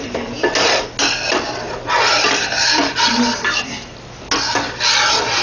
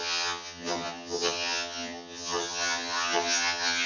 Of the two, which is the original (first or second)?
first